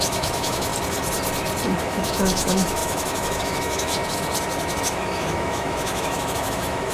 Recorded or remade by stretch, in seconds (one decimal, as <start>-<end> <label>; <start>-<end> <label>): 0.0-0.7 remade; 0.7-1.8 recorded; 1.8-4.0 remade; 4.0-4.8 recorded; 4.8-6.9 remade